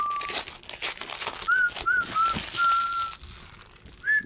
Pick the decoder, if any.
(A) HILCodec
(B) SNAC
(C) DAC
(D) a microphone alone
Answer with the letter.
D